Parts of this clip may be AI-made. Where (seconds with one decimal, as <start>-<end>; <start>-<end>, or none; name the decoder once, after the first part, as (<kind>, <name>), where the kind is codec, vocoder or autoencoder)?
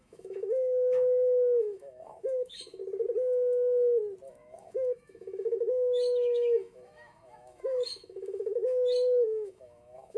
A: 0.0-2.8 (autoencoder, DAC-VAE); 4.3-10.2